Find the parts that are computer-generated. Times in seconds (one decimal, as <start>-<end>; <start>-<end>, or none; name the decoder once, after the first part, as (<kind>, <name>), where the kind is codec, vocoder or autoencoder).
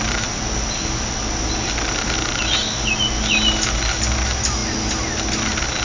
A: none